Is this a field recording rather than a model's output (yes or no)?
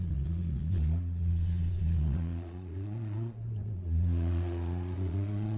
no